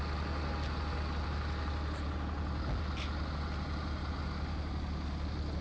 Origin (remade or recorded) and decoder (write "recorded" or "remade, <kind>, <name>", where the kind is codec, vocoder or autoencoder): recorded